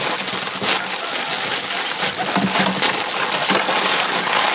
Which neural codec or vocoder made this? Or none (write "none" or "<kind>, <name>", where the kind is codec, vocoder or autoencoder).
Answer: none